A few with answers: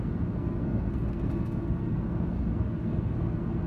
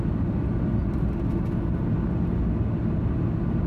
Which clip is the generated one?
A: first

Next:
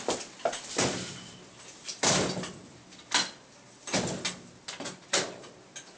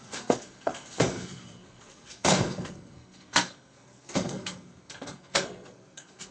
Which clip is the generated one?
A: second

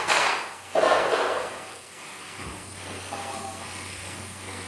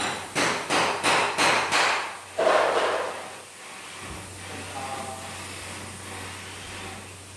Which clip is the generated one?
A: first